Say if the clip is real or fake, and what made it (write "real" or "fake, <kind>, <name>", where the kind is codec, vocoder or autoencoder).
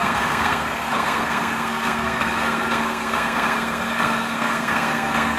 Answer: fake, codec, SNAC